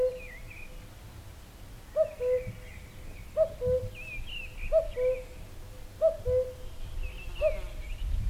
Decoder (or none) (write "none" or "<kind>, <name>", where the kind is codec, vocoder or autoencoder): none